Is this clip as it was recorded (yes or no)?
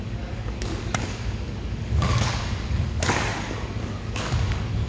no